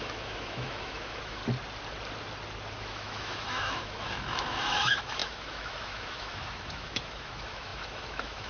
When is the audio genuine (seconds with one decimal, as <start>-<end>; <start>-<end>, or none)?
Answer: 1.4-2.8